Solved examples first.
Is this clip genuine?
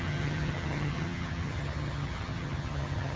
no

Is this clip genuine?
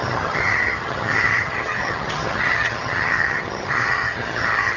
no